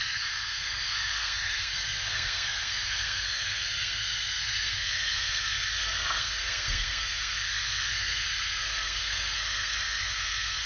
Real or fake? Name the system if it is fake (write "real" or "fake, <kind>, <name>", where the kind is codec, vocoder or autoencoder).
fake, codec, SNAC